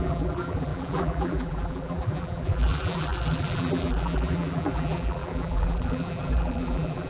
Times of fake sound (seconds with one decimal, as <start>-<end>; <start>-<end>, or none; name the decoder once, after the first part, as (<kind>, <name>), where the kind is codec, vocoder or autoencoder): 0.0-7.1 (vocoder, BigVGAN v2)